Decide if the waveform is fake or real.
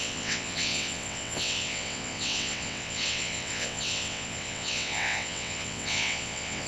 fake